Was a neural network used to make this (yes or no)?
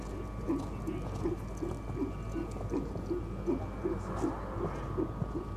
no